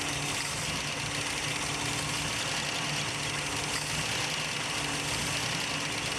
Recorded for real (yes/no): yes